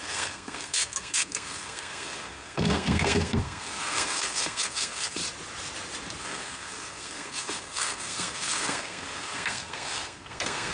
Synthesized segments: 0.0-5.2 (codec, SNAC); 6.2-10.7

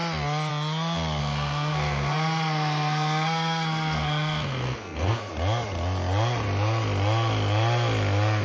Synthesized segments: 1.2-5.3 (codec, SNAC)

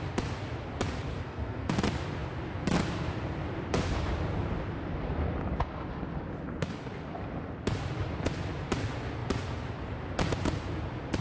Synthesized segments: 1.1-1.7 (codec, SNAC)

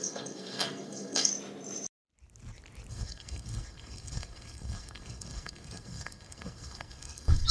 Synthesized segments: 0.0-1.3 (codec, SNAC); 2.9-7.5